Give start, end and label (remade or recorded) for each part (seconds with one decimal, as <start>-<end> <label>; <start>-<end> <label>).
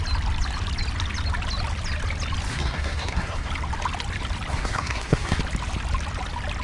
0.0-2.5 recorded; 2.5-3.5 remade; 3.5-4.5 recorded; 4.5-5.4 remade; 5.4-6.6 recorded